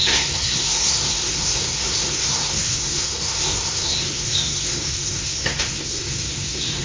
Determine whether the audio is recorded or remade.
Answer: remade